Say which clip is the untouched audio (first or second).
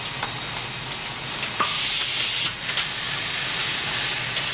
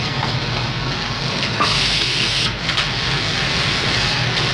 first